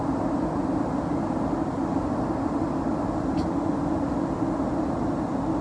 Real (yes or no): yes